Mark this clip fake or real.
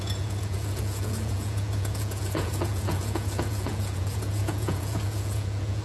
fake